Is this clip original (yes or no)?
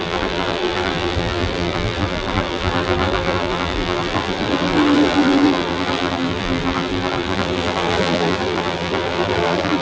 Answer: no